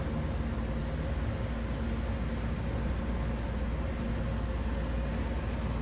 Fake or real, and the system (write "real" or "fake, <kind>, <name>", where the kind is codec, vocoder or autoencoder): real